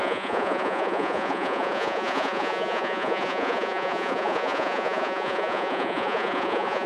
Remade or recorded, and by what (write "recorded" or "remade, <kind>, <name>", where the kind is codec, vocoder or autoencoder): remade, vocoder, Vocos